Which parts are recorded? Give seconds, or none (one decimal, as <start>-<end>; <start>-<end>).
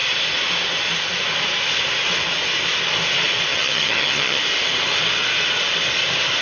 0.0-3.5; 4.4-6.4